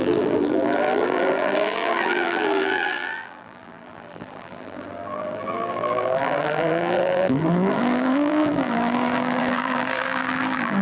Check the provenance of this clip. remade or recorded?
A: remade